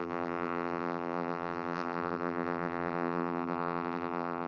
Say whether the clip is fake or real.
fake